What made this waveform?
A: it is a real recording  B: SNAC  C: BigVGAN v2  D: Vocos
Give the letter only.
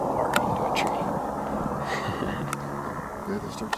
A